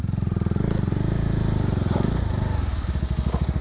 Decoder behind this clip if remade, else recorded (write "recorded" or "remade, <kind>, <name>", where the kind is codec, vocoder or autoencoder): recorded